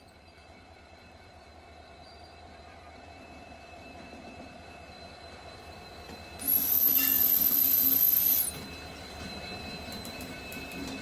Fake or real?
fake